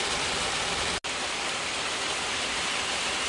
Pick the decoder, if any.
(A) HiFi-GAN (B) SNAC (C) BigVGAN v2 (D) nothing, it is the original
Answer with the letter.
D